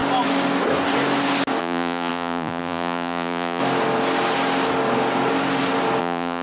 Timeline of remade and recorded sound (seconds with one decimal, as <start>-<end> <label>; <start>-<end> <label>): 0.0-1.6 recorded; 1.6-3.6 remade; 3.6-6.0 recorded; 6.0-6.4 remade